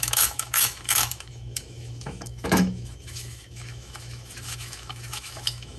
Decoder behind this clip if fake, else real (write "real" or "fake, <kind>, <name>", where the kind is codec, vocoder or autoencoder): fake, autoencoder, DAC-VAE